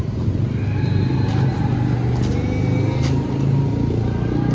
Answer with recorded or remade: recorded